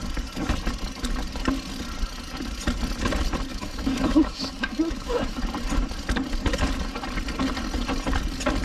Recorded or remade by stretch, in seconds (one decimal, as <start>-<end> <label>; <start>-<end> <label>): 0.0-3.5 recorded; 3.5-5.4 remade; 5.4-8.6 recorded